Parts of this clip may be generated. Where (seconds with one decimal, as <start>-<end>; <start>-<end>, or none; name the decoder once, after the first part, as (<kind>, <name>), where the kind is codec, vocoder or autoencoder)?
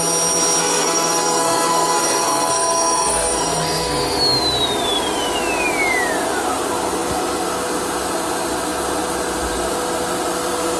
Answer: 0.6-4.2 (codec, SNAC)